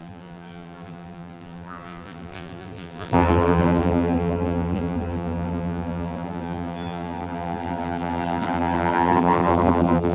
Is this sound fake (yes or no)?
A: yes